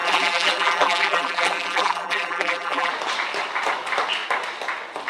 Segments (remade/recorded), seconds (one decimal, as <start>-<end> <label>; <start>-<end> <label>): 0.0-2.9 remade; 2.9-5.1 recorded